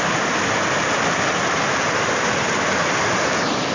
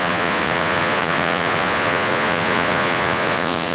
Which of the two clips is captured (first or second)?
first